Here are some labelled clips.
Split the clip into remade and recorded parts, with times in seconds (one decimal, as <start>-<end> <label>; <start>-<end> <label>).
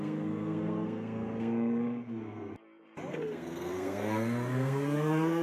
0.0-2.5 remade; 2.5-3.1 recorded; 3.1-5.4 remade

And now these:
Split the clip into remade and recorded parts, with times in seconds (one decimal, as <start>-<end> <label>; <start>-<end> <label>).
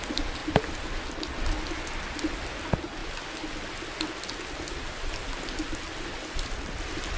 0.0-7.2 recorded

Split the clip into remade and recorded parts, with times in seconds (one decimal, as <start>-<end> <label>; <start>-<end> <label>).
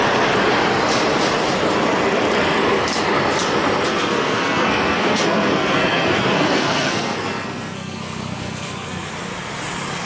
0.0-3.9 recorded; 3.9-9.1 remade; 9.1-10.1 recorded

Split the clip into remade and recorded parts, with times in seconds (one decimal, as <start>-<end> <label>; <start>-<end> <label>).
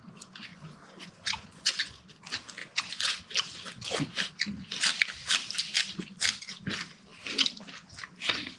0.0-0.5 recorded; 0.5-2.0 remade; 2.0-2.6 recorded; 2.6-3.2 remade; 3.2-8.6 recorded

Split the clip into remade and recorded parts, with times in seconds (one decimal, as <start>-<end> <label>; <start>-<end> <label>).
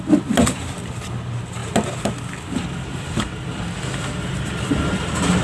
0.0-5.4 recorded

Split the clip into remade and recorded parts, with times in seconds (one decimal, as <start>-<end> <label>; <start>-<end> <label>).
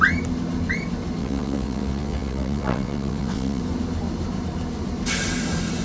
0.0-1.2 recorded; 1.2-3.6 remade; 3.6-5.8 recorded